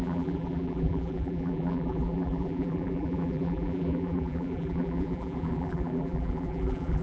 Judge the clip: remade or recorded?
remade